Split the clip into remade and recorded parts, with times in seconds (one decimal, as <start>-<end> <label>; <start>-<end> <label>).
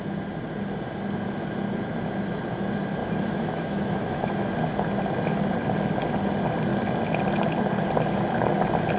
0.0-3.0 recorded; 3.0-4.5 remade; 4.5-9.0 recorded